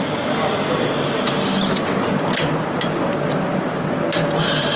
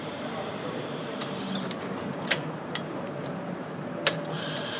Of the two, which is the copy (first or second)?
second